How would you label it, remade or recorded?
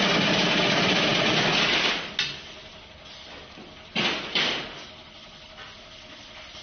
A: recorded